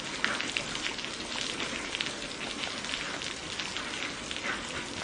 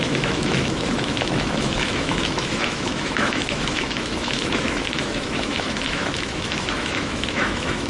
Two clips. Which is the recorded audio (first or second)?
first